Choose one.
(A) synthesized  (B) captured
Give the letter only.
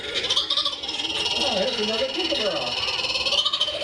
B